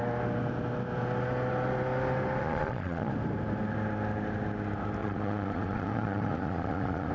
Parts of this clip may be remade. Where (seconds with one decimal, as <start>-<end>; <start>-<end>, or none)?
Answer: 2.4-3.1; 5.0-7.1